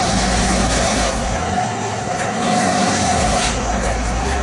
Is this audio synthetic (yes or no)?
yes